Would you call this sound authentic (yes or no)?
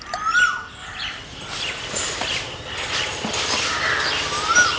no